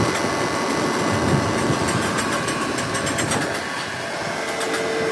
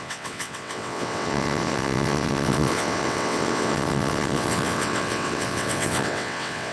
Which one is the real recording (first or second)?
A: first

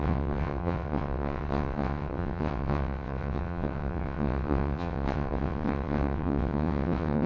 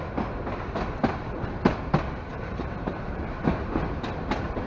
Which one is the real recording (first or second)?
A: second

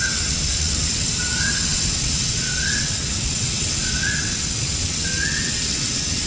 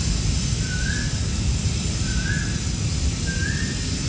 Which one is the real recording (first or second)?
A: second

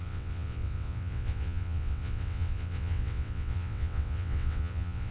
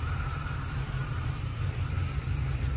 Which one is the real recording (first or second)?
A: second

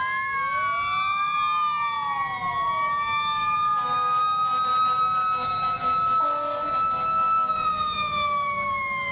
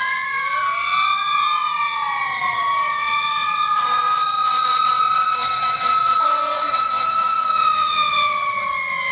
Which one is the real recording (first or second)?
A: first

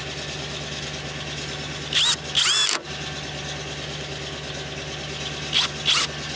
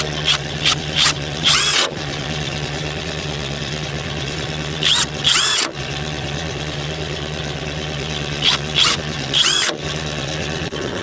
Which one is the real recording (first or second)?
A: first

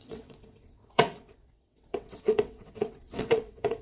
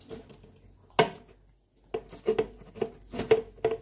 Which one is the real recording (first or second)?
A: second